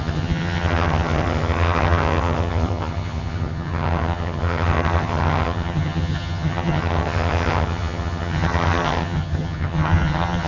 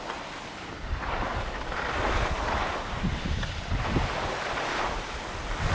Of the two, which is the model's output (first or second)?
first